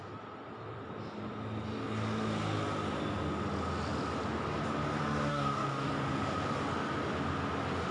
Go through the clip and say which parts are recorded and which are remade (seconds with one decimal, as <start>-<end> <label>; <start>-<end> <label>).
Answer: 0.0-5.3 recorded; 5.3-5.9 remade; 5.9-7.9 recorded